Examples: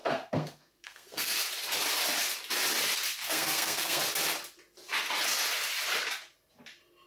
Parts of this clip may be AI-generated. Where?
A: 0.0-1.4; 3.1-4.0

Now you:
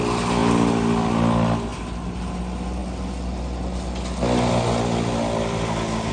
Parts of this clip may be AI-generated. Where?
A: none

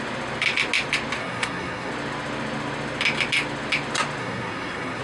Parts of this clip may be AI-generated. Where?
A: 1.2-1.9; 4.2-5.0

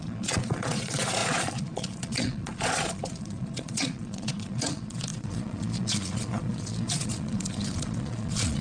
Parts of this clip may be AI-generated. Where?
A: 0.0-8.6

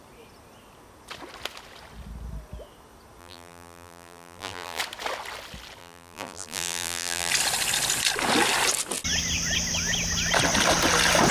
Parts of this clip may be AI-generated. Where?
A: 3.2-4.8; 5.8-7.3

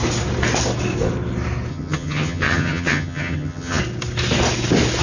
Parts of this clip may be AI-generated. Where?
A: 1.7-3.8

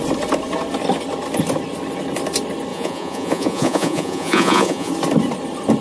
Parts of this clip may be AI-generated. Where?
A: 2.7-4.9